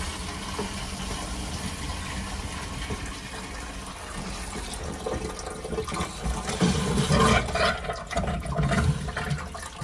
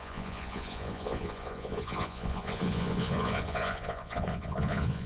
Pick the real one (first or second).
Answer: first